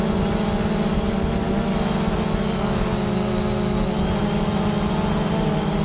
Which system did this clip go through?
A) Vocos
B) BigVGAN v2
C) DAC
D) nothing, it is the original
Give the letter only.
D